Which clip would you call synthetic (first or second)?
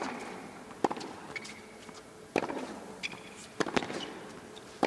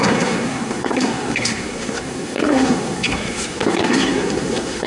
second